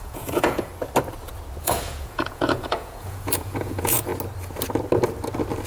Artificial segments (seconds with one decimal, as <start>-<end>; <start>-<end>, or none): 0.0-0.7; 1.6-4.1